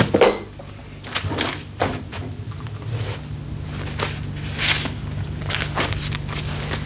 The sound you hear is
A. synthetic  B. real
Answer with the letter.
B